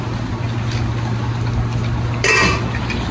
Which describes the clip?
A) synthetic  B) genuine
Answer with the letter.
B